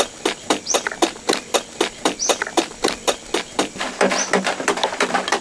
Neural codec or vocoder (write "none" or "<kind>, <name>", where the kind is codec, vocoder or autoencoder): vocoder, BigVGAN v2